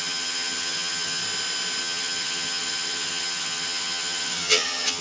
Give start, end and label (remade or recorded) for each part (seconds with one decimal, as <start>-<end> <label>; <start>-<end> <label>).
0.0-1.2 remade; 1.2-1.8 recorded; 1.8-5.0 remade